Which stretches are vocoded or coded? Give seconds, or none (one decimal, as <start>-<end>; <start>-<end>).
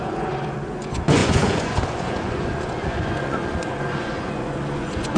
0.0-5.2